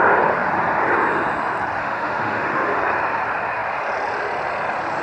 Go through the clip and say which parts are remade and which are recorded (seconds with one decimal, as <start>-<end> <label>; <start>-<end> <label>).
0.0-1.8 recorded; 1.8-2.8 remade; 2.8-5.0 recorded